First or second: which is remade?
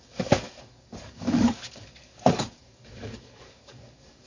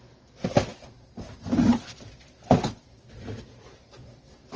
first